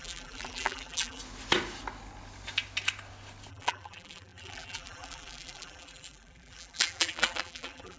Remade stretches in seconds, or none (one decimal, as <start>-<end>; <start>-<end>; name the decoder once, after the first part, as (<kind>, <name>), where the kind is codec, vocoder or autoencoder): 0.0-1.2 (vocoder, BigVGAN v2); 3.5-8.0